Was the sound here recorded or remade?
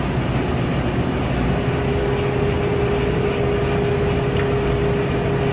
recorded